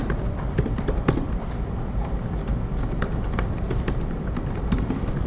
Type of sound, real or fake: fake